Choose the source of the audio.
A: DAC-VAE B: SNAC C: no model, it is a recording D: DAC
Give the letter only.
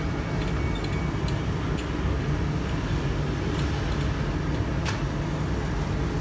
C